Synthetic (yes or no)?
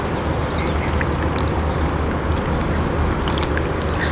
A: no